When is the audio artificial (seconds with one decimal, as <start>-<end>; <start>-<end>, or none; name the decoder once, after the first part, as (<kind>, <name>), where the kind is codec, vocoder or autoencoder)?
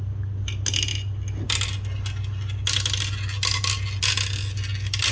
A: none